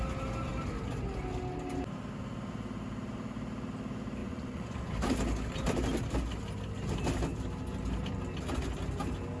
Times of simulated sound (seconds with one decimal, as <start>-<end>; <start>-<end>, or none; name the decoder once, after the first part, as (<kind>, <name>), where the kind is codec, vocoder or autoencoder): 4.2-4.9 (vocoder, Vocos)